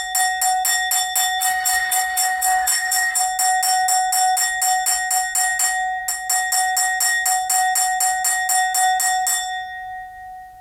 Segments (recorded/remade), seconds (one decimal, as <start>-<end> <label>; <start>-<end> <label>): 0.0-1.4 recorded; 1.4-3.2 remade; 3.2-10.6 recorded